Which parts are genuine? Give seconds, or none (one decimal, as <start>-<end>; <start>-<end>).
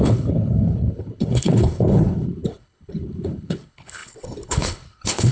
none